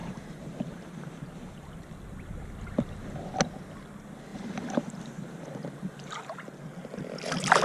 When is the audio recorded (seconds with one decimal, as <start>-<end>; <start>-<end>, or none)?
1.7-4.3; 7.0-7.6

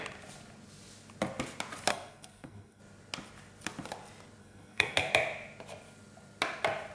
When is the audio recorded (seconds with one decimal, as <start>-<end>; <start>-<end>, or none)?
0.0-1.9; 2.8-4.4; 5.1-6.9